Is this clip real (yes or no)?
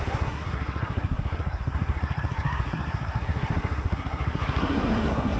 no